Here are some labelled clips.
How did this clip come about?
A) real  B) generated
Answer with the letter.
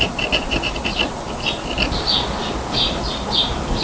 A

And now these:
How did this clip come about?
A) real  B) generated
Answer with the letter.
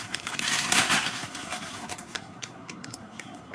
B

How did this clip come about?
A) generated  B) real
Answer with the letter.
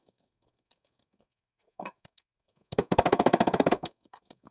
A